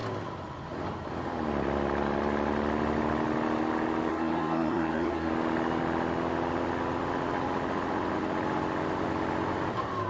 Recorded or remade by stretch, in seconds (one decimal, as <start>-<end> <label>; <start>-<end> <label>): 0.0-4.1 recorded; 4.1-5.3 remade; 5.3-10.1 recorded